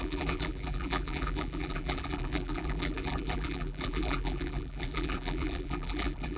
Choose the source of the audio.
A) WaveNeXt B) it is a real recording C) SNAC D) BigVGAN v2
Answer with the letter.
D